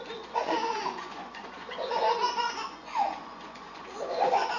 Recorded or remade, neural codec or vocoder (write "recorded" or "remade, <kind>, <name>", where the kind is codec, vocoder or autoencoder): remade, vocoder, Vocos